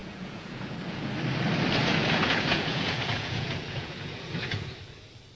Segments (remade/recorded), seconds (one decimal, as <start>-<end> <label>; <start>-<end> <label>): 0.0-1.1 remade; 1.1-1.8 recorded; 1.8-4.8 remade; 4.8-5.4 recorded